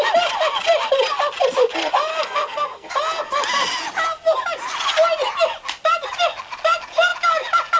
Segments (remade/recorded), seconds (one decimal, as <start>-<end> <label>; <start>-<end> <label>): 0.0-2.1 recorded; 2.1-2.9 remade; 2.9-7.8 recorded